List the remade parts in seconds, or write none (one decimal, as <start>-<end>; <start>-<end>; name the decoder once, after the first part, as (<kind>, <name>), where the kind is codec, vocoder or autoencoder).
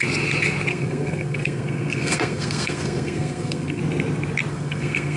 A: 0.7-3.8 (codec, SNAC); 4.5-5.2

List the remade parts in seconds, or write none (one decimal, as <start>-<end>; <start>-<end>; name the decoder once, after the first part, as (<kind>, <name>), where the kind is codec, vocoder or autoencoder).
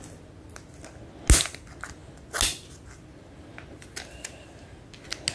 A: none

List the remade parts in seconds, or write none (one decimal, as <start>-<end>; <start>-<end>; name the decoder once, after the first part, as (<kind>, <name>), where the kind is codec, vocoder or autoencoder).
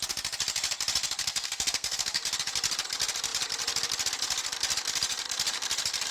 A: 1.2-2.2 (codec, SNAC)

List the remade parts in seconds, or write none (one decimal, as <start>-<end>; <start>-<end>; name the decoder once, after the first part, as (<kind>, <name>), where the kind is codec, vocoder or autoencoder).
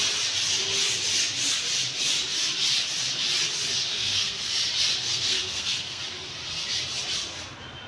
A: 3.9-4.5 (codec, SNAC); 5.0-6.0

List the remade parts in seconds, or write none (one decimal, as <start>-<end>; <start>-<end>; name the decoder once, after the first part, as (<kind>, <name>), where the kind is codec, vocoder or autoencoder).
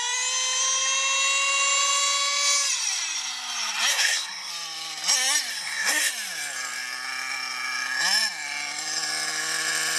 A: 3.9-4.5 (codec, SNAC); 5.5-6.1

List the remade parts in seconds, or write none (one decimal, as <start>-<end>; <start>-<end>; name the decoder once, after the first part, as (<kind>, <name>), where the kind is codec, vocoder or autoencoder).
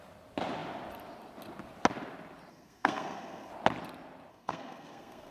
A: 2.5-3.5 (codec, SNAC); 4.3-5.3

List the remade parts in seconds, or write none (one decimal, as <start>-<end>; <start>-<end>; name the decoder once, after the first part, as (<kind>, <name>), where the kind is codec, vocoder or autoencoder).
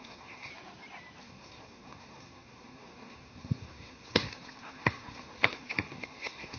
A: 0.0-0.5 (codec, SNAC); 1.2-6.6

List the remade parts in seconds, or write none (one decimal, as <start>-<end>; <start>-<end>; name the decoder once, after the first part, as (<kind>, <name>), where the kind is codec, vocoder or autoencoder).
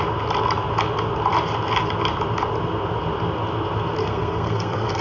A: 4.0-5.0 (codec, SNAC)